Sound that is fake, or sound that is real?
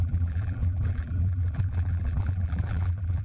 fake